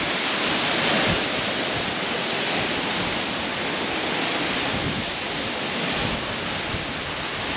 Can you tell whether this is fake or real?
real